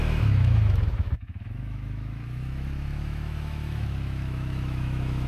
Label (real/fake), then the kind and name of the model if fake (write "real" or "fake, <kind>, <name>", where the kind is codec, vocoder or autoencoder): fake, autoencoder, DAC-VAE